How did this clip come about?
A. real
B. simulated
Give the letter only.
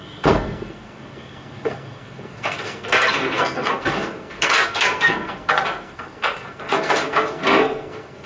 B